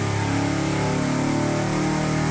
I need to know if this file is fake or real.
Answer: real